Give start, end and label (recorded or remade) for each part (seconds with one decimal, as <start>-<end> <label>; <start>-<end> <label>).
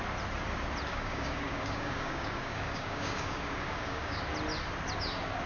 0.0-0.9 recorded; 0.9-4.2 remade; 4.2-5.5 recorded